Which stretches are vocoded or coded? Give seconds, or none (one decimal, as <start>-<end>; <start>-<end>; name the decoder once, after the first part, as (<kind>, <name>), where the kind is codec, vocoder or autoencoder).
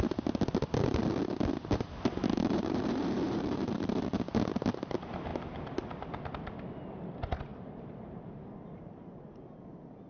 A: 2.2-4.3 (vocoder, BigVGAN v2); 7.5-9.2